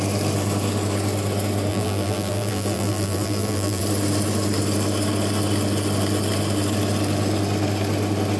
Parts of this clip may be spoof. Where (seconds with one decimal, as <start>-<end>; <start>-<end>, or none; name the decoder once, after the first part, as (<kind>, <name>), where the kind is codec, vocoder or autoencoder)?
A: 1.7-3.8 (vocoder, BigVGAN v2)

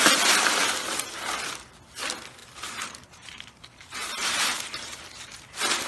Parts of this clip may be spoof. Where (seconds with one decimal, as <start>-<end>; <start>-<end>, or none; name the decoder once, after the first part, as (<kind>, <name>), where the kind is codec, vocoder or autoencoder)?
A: 2.4-5.5 (vocoder, BigVGAN v2)

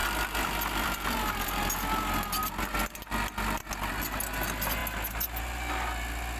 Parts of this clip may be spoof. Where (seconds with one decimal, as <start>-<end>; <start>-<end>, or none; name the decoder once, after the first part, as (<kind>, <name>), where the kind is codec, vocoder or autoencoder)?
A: 0.0-1.9 (vocoder, BigVGAN v2)